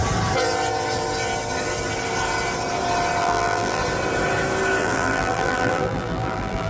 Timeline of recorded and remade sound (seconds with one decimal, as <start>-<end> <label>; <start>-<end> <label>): 0.0-3.2 recorded; 3.2-3.8 remade; 3.8-4.8 recorded; 4.8-6.7 remade